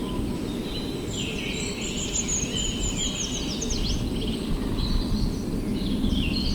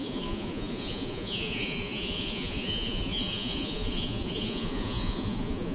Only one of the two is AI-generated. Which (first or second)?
second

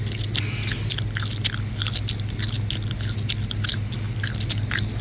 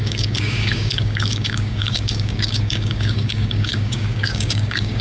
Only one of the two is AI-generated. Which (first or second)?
second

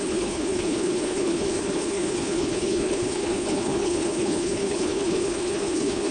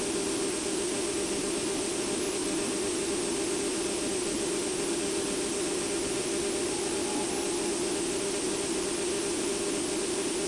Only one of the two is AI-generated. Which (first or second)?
first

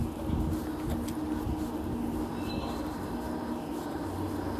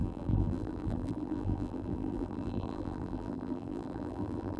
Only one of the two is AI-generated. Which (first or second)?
second